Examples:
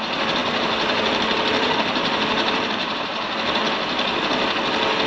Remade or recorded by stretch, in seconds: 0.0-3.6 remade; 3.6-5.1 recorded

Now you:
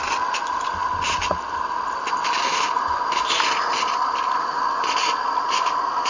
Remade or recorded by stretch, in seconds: 0.0-6.1 recorded

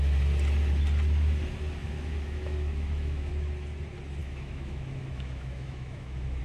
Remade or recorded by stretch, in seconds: 0.0-1.8 recorded; 1.8-3.3 remade; 3.3-4.2 recorded; 4.2-6.4 remade

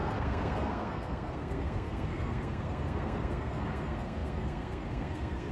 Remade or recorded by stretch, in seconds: 0.0-5.5 remade

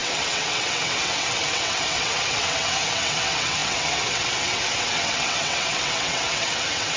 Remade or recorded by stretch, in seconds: 0.0-7.0 remade

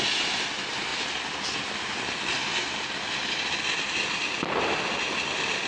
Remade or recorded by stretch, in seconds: 0.0-5.7 recorded